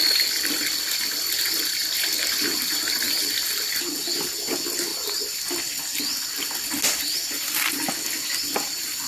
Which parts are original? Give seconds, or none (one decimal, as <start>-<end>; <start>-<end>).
0.0-1.8; 3.8-4.9; 5.5-9.1